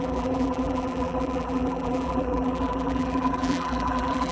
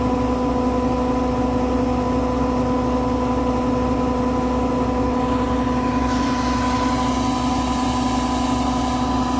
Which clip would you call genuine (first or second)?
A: second